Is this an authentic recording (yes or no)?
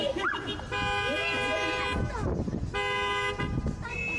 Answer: yes